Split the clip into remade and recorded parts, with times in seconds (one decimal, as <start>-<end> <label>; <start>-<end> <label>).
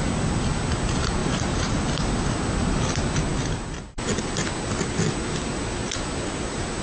0.0-1.2 recorded; 1.2-1.8 remade; 1.8-6.8 recorded